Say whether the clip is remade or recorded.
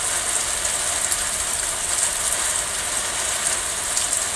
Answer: recorded